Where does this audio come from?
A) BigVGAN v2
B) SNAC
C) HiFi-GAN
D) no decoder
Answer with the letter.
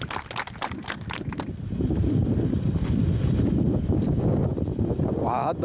D